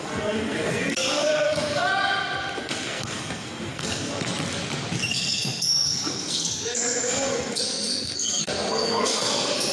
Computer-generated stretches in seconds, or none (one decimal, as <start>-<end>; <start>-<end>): 0.0-1.9; 2.6-4.3; 5.1-9.7